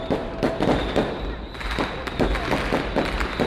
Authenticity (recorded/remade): recorded